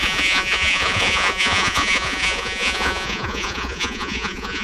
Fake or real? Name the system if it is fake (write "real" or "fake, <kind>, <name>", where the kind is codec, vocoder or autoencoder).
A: fake, vocoder, Vocos